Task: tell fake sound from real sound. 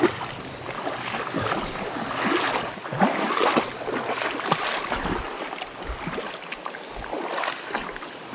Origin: real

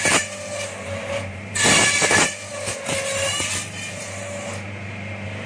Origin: real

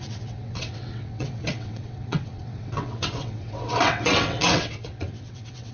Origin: fake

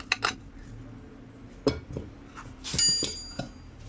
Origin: real